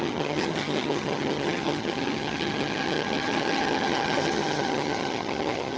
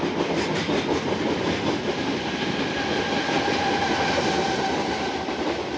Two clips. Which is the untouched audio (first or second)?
second